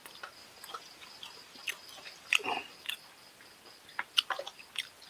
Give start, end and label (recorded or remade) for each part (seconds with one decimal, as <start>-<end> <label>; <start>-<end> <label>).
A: 0.0-5.1 recorded